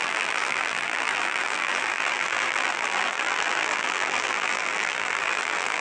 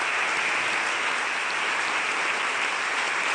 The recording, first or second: second